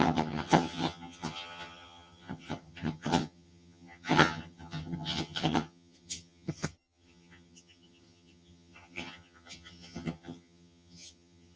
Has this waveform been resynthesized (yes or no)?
yes